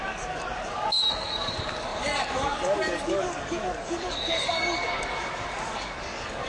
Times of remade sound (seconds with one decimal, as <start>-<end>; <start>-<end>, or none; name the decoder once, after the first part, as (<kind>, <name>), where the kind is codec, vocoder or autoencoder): 0.0-6.5 (codec, DAC)